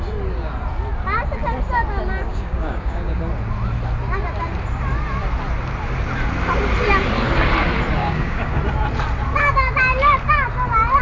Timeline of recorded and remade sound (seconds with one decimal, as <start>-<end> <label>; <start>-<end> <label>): 0.0-2.3 recorded; 2.3-3.2 remade; 3.2-8.0 recorded; 8.0-8.6 remade; 8.6-11.0 recorded